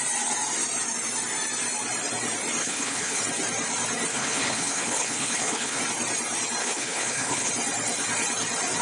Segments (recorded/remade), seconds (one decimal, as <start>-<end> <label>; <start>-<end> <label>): 0.0-2.6 recorded; 2.6-3.2 remade; 3.2-4.1 recorded; 4.1-5.8 remade; 5.8-6.6 recorded; 6.6-7.5 remade; 7.5-8.8 recorded